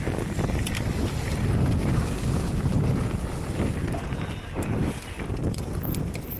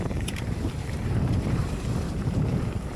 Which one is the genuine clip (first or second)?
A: first